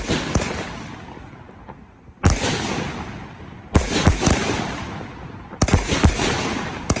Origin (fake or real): real